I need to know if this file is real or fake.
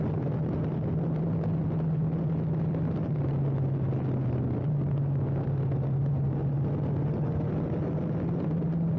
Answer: real